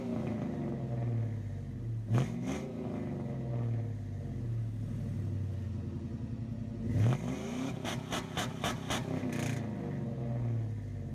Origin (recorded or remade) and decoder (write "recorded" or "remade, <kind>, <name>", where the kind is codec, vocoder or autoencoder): recorded